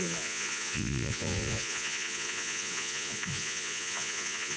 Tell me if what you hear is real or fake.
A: fake